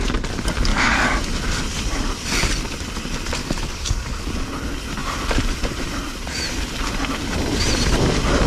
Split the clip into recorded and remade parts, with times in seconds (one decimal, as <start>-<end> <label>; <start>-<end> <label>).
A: 0.0-0.7 recorded; 0.7-1.2 remade; 1.2-3.4 recorded; 3.4-4.3 remade; 4.3-8.5 recorded